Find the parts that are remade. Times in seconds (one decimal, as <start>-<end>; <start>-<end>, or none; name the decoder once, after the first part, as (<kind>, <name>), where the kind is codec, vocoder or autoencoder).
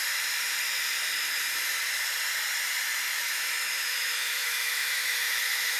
3.1-5.8 (autoencoder, DAC-VAE)